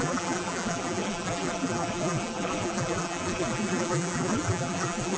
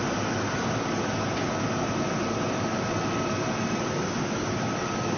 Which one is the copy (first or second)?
first